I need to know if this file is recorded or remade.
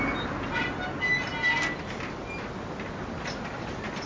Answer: recorded